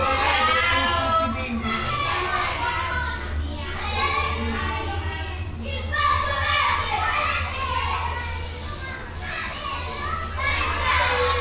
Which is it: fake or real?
real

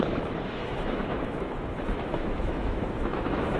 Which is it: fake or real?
fake